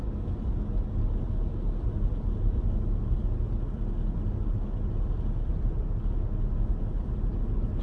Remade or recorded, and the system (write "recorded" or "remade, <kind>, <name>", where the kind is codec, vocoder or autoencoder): recorded